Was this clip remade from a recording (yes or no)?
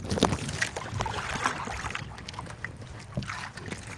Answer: no